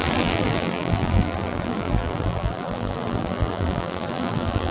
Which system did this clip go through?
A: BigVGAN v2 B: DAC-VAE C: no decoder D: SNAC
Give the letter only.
A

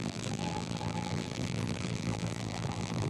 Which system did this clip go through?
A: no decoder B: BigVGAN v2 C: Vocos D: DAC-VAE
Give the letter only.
B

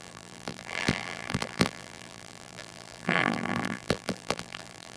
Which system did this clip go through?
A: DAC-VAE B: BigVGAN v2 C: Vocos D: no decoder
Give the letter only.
B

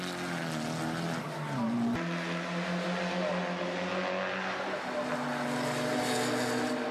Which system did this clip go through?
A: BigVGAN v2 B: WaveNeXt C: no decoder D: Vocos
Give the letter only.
C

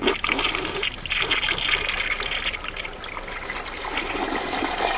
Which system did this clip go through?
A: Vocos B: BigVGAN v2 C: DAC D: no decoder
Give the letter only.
D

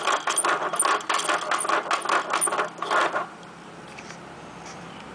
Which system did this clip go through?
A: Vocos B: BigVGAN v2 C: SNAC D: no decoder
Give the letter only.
D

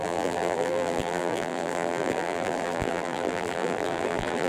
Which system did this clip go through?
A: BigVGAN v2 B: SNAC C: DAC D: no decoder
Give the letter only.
A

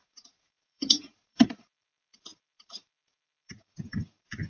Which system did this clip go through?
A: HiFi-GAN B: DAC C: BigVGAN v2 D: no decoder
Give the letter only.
C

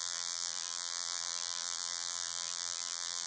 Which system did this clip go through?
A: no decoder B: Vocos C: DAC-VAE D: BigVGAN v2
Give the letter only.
D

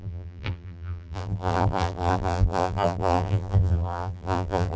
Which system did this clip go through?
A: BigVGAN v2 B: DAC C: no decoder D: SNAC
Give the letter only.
A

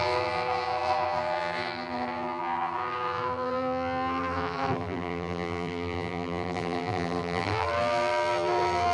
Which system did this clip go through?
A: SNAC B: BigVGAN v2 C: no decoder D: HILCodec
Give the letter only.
B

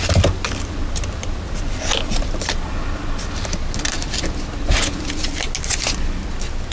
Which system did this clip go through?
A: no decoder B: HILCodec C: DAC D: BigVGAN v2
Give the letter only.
A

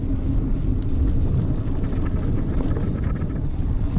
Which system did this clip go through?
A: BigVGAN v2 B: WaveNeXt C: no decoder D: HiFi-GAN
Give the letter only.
C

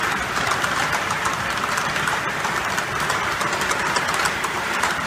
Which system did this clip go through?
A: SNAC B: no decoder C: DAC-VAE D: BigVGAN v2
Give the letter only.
D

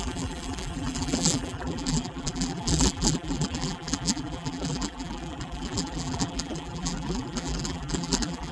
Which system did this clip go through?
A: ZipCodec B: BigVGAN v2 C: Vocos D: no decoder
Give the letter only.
B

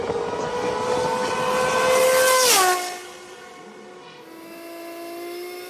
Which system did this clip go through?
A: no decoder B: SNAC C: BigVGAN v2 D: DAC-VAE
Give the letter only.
A